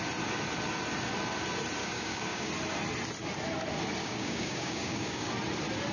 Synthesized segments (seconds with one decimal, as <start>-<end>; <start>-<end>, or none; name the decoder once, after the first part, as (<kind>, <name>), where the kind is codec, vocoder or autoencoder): 1.8-2.5 (codec, DAC); 4.0-5.3